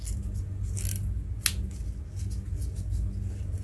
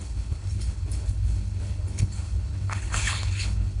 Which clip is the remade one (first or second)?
second